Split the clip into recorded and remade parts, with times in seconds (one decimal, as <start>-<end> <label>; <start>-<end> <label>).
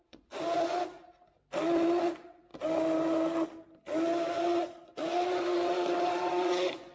0.0-0.4 remade; 0.4-2.0 recorded; 2.0-2.5 remade; 2.5-4.4 recorded; 4.4-6.9 remade